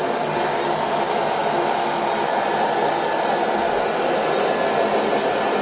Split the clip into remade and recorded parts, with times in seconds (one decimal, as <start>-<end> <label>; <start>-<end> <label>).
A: 0.0-5.6 recorded